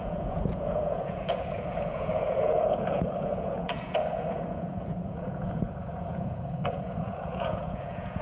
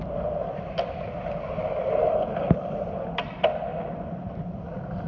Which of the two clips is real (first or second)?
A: second